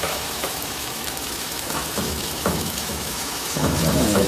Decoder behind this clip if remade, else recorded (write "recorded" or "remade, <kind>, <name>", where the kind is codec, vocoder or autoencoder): remade, autoencoder, DAC-VAE